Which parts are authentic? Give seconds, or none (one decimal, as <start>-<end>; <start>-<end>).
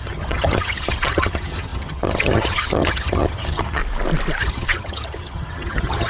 3.8-4.4